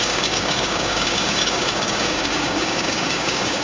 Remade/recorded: remade